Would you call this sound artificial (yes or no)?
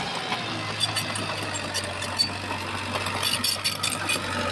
no